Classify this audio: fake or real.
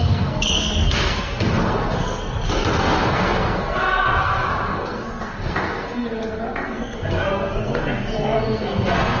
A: fake